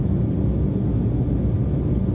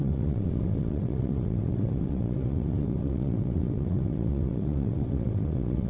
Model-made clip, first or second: second